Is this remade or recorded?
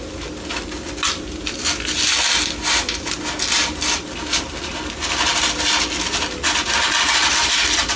recorded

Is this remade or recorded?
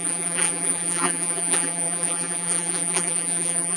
remade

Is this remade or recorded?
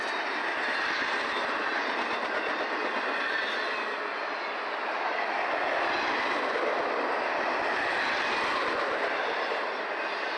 recorded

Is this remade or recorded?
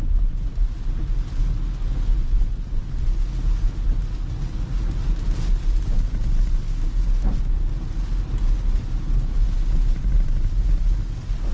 recorded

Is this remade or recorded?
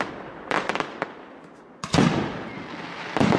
remade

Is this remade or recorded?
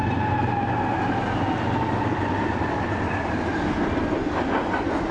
recorded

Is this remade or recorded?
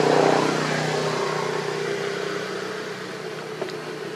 recorded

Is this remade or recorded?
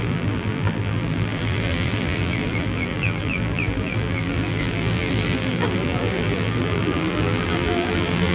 remade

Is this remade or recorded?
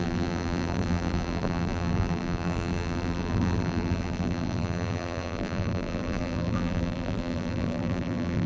remade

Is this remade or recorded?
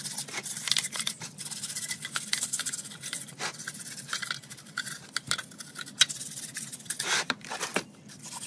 remade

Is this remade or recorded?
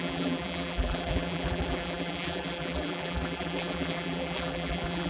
remade